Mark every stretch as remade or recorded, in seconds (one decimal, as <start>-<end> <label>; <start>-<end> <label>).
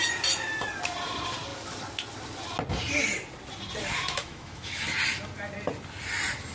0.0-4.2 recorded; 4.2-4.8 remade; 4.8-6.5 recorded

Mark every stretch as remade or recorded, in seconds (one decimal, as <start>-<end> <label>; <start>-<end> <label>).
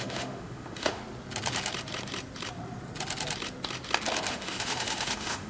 0.0-1.0 remade; 1.0-4.3 recorded; 4.3-5.5 remade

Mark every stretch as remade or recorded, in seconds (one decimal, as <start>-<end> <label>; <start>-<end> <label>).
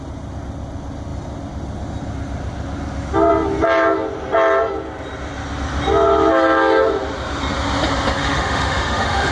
0.0-8.2 recorded; 8.2-9.3 remade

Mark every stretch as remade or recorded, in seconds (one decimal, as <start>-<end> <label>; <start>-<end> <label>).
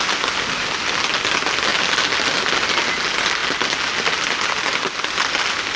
0.0-5.8 recorded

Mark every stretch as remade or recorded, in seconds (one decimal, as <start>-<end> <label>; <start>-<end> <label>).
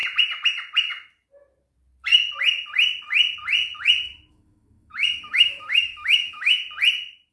0.0-4.3 recorded; 4.3-6.6 remade; 6.6-7.3 recorded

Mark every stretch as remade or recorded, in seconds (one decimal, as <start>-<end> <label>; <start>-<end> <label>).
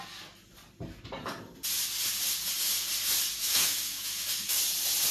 0.0-3.4 recorded; 3.4-4.6 remade; 4.6-5.1 recorded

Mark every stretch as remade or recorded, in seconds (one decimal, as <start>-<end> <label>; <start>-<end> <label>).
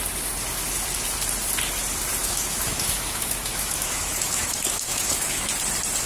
0.0-2.2 recorded; 2.2-5.5 remade; 5.5-6.1 recorded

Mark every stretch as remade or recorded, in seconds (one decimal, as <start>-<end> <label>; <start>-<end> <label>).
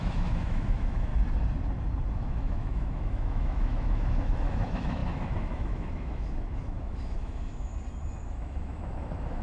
0.0-1.1 remade; 1.1-2.1 recorded; 2.1-7.7 remade; 7.7-8.2 recorded; 8.2-9.4 remade